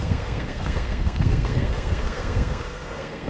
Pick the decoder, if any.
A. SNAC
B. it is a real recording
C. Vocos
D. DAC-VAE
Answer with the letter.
A